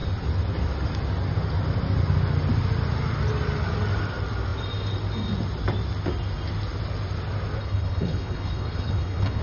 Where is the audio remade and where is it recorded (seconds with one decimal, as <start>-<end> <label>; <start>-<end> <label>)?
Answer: 0.0-7.6 recorded; 7.6-9.4 remade